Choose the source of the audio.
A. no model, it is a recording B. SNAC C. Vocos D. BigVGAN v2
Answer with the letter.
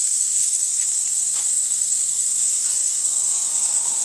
B